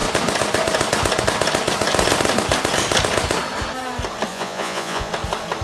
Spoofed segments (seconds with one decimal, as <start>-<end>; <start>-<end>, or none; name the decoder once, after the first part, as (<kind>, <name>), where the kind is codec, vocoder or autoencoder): 4.3-5.1 (vocoder, Vocos)